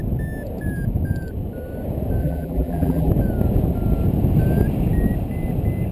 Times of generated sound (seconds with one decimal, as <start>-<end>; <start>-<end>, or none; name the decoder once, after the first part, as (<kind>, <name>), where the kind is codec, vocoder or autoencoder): 2.2-3.1 (vocoder, BigVGAN v2)